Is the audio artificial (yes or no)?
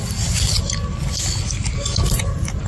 no